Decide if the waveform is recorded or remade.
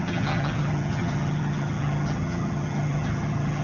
remade